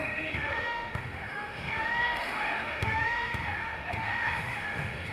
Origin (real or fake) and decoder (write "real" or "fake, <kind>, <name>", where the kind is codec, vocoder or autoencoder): fake, autoencoder, DAC-VAE